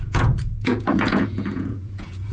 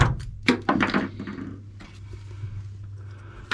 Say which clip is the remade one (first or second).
first